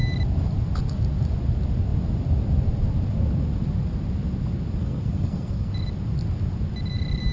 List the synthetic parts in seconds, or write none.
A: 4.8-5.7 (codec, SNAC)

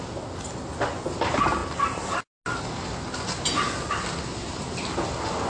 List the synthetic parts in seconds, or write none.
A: none

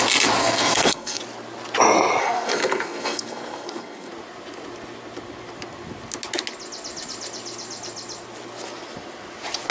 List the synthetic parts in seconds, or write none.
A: 0.4-1.2 (codec, SNAC); 2.2-4.1

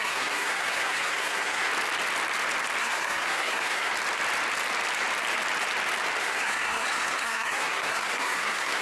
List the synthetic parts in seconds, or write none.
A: 0.0-1.7 (codec, SNAC); 2.8-3.9; 6.2-8.8

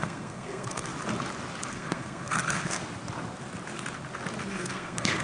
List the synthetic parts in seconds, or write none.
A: 0.0-0.9 (codec, SNAC); 1.7-2.8; 4.5-5.2

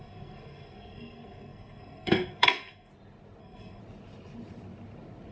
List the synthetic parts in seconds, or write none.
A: 0.0-2.9 (codec, SNAC); 3.4-3.8